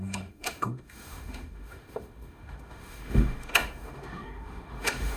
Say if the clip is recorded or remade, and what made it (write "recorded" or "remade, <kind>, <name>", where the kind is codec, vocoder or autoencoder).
remade, autoencoder, DAC-VAE